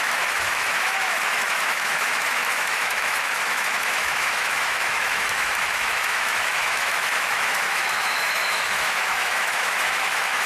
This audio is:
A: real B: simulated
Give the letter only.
B